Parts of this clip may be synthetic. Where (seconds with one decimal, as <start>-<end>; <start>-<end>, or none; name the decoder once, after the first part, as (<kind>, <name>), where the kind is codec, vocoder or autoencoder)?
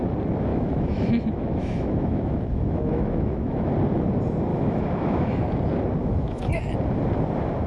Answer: 0.5-3.7 (autoencoder, DAC-VAE); 4.5-5.4; 6.0-6.6